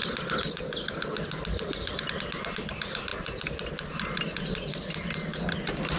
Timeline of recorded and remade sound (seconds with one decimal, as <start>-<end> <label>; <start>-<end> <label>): 0.0-6.0 recorded